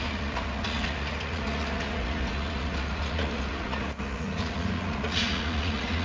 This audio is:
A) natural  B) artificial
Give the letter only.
B